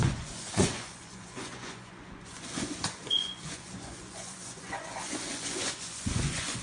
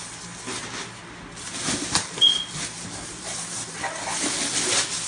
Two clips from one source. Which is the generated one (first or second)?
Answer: first